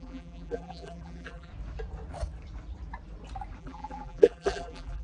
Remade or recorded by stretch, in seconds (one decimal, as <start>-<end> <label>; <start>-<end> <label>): 0.0-1.5 remade; 1.5-3.6 recorded; 3.6-5.0 remade